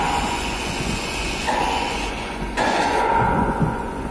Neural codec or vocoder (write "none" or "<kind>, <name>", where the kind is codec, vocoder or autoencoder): vocoder, Vocos